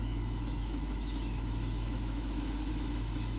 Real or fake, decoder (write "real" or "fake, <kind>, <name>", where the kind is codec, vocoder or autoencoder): fake, autoencoder, DAC-VAE